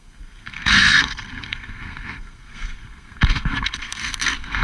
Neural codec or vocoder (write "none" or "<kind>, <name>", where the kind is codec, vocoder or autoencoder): codec, SNAC